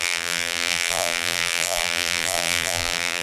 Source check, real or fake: fake